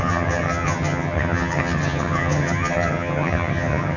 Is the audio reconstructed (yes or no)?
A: yes